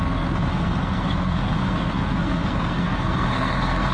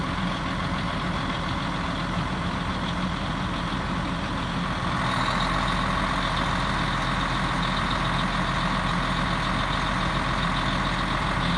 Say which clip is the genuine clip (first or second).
second